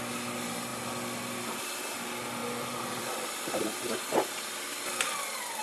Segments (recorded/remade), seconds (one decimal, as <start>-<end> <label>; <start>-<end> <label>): 0.0-2.4 recorded; 2.4-3.9 remade; 3.9-5.6 recorded